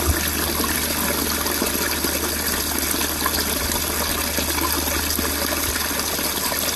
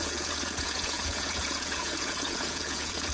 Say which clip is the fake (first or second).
second